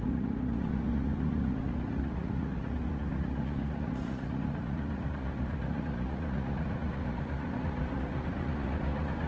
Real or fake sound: fake